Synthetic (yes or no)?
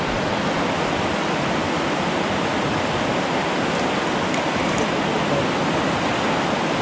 no